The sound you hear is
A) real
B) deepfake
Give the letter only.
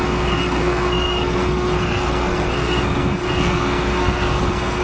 B